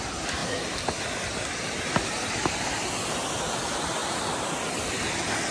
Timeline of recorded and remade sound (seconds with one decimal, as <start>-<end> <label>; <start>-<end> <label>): 0.0-5.5 recorded